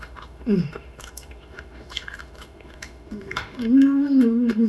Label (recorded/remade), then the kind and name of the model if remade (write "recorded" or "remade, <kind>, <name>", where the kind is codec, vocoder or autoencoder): remade, autoencoder, DAC-VAE